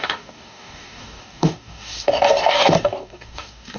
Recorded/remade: remade